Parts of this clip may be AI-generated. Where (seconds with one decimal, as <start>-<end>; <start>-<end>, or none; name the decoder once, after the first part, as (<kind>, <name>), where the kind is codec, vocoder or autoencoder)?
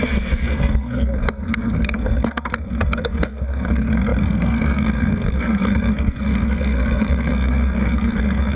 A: 0.0-8.6 (codec, SNAC)